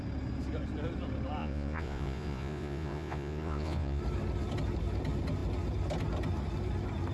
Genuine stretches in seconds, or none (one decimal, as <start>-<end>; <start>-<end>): 0.0-1.4; 4.0-7.1